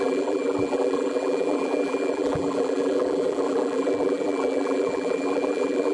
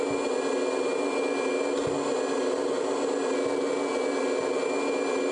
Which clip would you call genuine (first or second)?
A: second